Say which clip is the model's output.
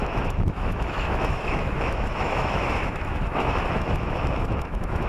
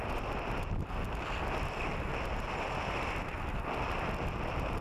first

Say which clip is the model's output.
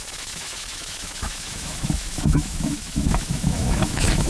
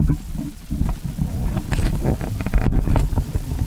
first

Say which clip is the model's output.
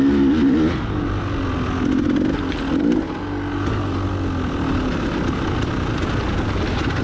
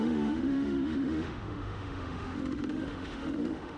second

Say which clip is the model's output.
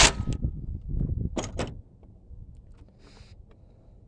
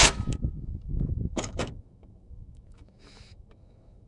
second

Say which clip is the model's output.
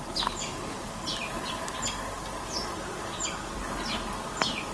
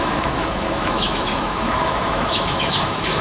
second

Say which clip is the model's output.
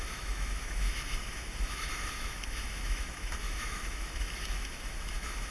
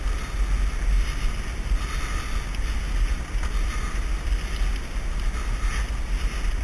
first